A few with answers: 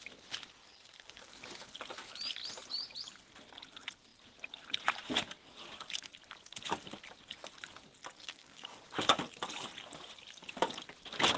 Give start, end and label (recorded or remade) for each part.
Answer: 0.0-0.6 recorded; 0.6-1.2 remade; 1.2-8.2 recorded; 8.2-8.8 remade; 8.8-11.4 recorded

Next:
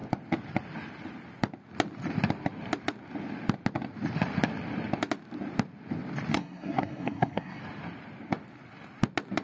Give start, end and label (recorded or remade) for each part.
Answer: 0.0-6.3 recorded; 6.3-7.6 remade; 7.6-9.4 recorded

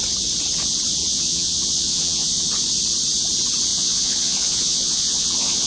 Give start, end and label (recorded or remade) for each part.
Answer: 0.0-1.0 recorded; 1.0-2.5 remade; 2.5-3.7 recorded; 3.7-5.7 remade